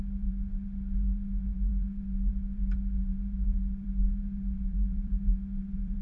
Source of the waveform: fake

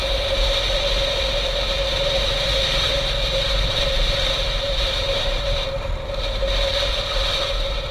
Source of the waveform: fake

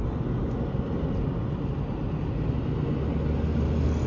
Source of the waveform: real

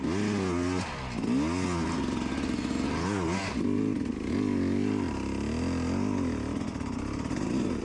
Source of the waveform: real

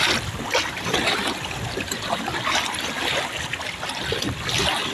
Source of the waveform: real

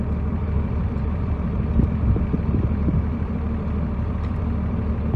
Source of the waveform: fake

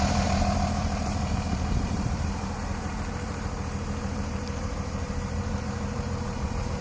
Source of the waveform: fake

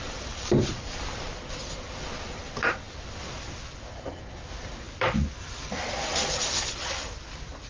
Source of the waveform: fake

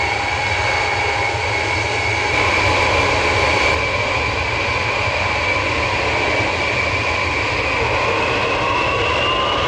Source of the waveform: real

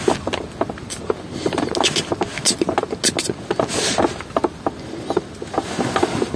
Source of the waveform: real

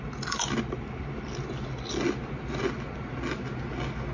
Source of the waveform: real